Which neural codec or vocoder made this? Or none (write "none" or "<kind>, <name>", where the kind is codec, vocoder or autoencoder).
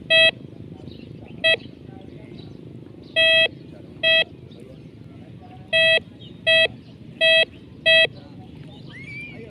none